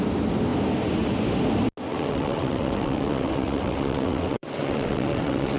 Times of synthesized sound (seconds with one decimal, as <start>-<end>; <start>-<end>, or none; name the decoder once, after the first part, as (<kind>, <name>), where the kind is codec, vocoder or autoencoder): 1.9-5.6 (vocoder, WaveNeXt)